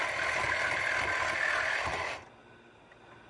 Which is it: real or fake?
real